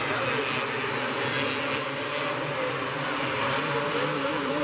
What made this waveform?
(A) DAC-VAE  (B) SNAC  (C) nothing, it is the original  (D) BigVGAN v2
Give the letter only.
C